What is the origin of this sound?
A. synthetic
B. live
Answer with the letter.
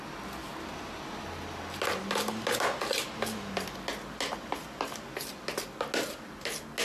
B